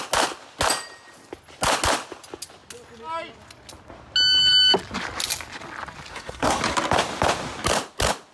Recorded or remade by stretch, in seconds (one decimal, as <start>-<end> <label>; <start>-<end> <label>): 0.0-6.1 recorded; 6.1-6.6 remade; 6.6-8.3 recorded